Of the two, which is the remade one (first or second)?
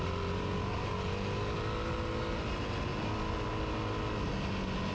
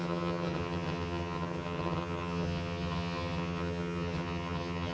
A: second